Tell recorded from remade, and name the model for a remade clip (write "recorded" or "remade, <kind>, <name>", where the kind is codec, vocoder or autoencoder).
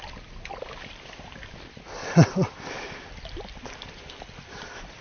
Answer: recorded